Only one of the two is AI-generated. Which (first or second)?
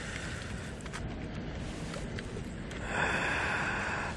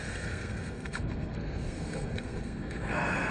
second